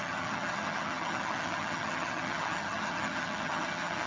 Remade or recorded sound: remade